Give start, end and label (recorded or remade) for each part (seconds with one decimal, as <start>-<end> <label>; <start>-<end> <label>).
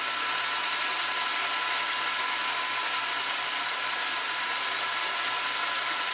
0.0-6.1 recorded